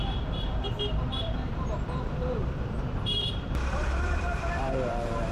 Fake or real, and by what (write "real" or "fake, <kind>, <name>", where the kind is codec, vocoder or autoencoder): fake, vocoder, BigVGAN v2